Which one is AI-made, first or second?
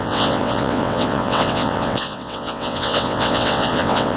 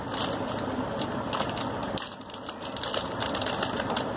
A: first